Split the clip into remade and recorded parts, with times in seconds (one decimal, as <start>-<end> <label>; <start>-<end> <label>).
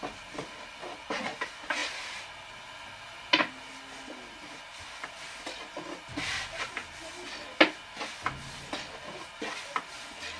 0.0-10.4 recorded